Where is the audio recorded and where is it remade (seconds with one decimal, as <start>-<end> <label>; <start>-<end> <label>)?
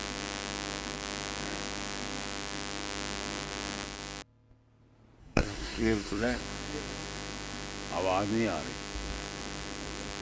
0.0-5.2 recorded; 5.2-6.4 remade; 6.4-10.2 recorded